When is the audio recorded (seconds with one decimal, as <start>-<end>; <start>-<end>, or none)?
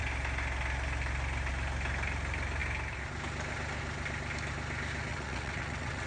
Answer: 0.0-5.1